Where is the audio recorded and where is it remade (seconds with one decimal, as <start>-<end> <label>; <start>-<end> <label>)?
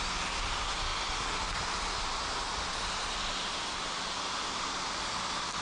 0.0-5.6 recorded